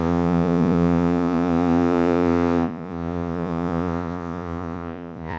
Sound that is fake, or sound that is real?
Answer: fake